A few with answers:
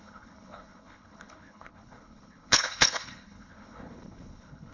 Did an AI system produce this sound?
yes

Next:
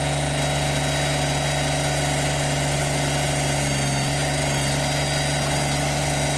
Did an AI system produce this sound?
no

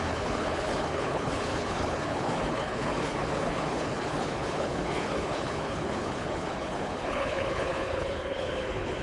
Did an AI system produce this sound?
yes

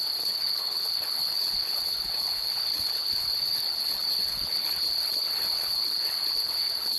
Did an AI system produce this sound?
yes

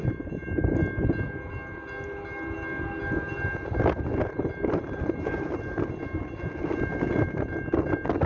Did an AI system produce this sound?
no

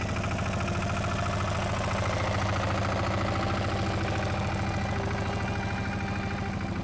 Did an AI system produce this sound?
no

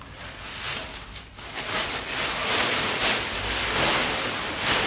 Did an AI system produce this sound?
no